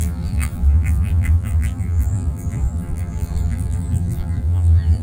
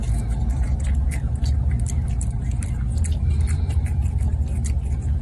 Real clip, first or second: second